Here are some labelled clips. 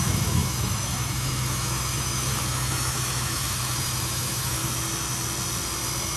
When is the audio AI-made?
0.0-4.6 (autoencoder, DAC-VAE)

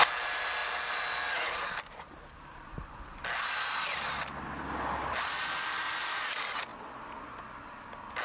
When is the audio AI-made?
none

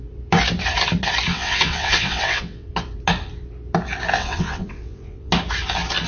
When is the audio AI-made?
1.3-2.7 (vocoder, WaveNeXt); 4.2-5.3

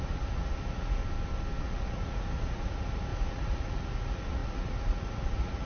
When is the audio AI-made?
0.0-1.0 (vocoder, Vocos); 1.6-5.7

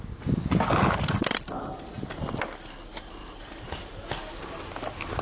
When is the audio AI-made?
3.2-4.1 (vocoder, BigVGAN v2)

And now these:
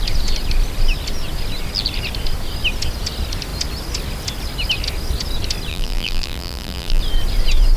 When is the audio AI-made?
5.7-7.0 (vocoder, BigVGAN v2)

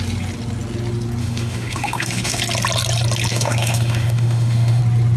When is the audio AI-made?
1.2-2.4 (autoencoder, DAC-VAE); 3.3-4.8

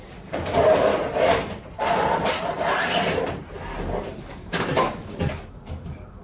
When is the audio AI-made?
0.0-0.9 (codec, DAC); 4.2-6.2